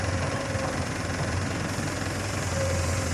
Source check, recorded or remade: remade